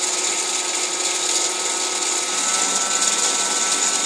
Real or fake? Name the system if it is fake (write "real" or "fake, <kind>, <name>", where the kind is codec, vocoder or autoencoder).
real